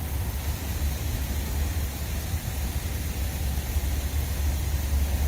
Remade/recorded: recorded